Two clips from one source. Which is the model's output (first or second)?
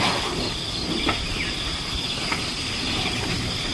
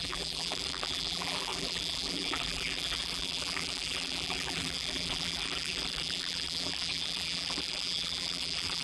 second